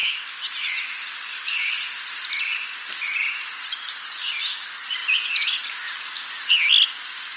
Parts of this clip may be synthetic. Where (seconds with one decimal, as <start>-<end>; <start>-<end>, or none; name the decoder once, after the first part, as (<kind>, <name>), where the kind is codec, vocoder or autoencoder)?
0.0-4.4 (vocoder, BigVGAN v2)